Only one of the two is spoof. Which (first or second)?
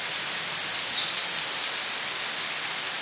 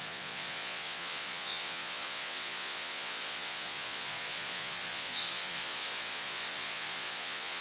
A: second